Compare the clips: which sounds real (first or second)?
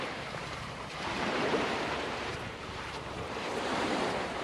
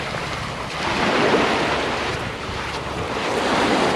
second